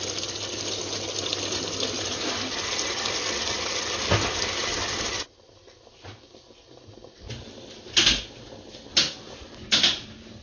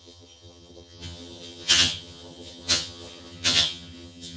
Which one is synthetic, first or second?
second